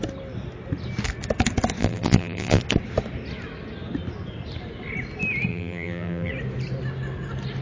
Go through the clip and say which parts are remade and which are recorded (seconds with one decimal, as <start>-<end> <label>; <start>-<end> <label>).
0.0-1.8 recorded; 1.8-2.6 remade; 2.6-5.5 recorded; 5.5-6.3 remade; 6.3-7.6 recorded